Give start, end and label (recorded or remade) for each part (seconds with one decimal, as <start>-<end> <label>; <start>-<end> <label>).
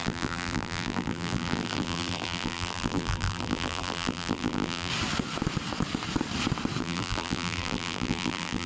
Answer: 0.0-4.9 remade; 4.9-6.8 recorded; 6.8-8.7 remade